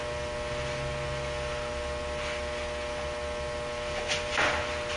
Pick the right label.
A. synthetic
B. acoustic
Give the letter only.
B